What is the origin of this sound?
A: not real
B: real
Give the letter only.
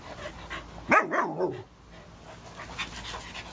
B